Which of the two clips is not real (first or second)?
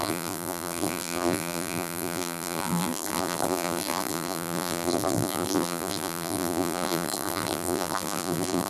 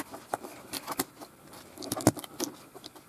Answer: first